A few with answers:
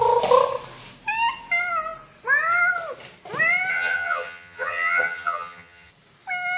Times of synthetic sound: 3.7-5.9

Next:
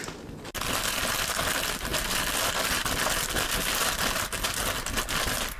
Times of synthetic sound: 1.9-4.0

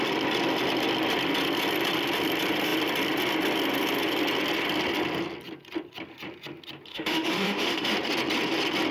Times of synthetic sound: 6.9-7.9

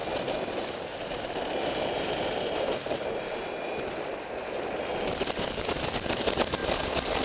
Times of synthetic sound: 0.0-7.2

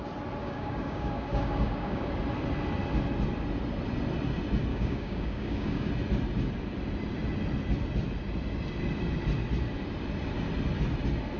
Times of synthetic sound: 0.4-2.1; 4.7-5.9

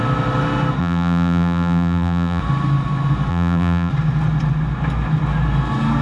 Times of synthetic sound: 0.8-2.4; 3.3-3.9